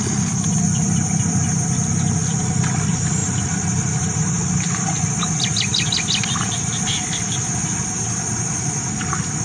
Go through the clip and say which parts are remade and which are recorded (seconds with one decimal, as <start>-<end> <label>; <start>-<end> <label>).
0.0-9.4 recorded